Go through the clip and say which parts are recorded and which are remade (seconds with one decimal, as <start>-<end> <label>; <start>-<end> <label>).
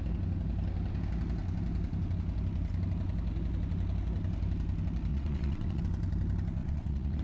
0.0-5.1 recorded; 5.1-5.8 remade; 5.8-6.6 recorded; 6.6-7.2 remade